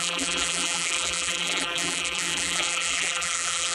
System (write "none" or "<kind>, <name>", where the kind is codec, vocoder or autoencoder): vocoder, BigVGAN v2